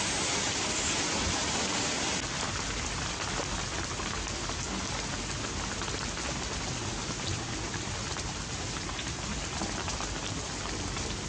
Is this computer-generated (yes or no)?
no